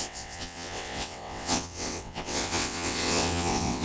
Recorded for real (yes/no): no